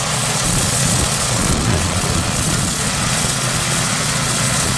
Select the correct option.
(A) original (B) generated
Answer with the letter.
B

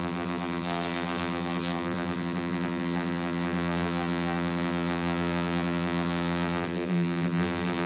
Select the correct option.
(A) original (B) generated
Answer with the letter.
B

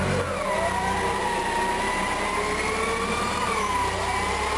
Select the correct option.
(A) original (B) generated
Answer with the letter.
A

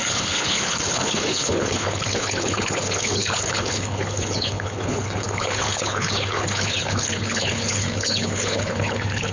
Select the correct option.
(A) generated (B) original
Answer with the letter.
A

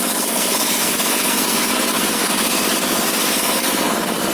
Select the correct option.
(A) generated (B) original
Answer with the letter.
A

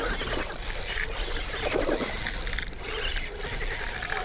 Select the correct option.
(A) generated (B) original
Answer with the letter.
B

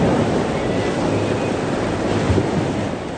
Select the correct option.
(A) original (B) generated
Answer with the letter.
A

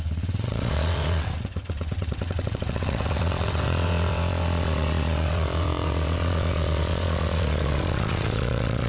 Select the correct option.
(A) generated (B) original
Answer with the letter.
A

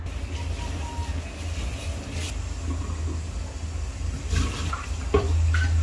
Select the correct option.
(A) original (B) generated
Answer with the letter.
A